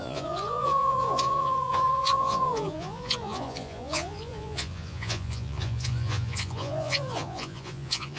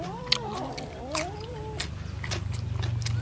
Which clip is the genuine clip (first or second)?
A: second